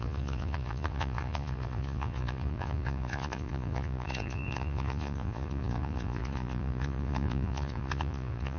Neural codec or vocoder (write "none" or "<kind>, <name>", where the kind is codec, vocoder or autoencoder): vocoder, Vocos